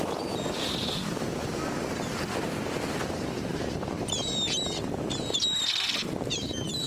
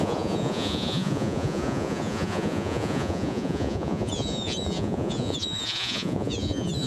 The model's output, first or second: second